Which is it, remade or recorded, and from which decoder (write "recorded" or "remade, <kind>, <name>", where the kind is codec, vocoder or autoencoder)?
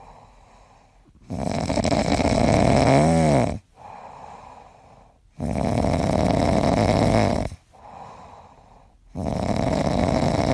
recorded